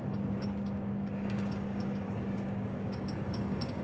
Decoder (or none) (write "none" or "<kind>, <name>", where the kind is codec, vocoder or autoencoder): codec, DAC